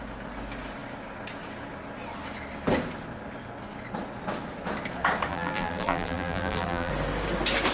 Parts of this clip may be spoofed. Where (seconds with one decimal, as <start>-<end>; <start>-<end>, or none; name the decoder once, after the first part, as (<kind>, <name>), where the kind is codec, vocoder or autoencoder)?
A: 5.3-6.9 (vocoder, BigVGAN v2)